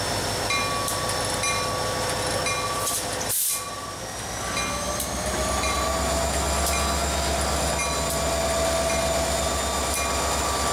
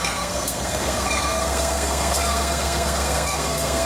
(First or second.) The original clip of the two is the first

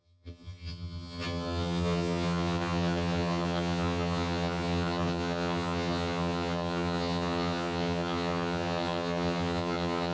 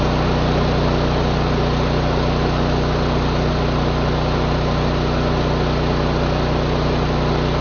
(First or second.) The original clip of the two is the second